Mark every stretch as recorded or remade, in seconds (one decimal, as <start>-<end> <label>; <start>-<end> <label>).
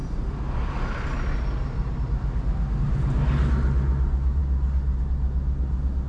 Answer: 0.0-6.1 recorded